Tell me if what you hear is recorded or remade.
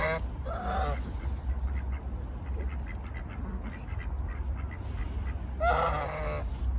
recorded